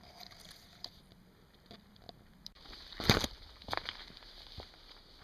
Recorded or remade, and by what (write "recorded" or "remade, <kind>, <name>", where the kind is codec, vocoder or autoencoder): recorded